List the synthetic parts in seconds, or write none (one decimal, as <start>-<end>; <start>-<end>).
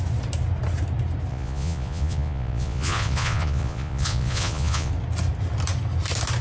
1.3-4.9